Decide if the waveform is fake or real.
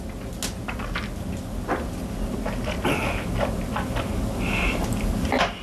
real